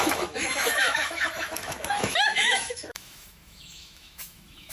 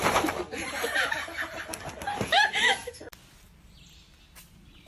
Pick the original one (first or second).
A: second